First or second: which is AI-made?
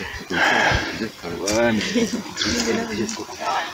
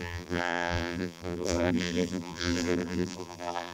second